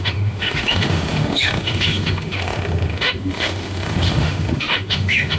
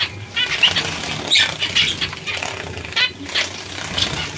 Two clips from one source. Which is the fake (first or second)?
first